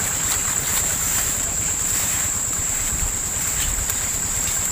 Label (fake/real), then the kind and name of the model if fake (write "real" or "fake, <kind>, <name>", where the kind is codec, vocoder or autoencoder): fake, vocoder, BigVGAN v2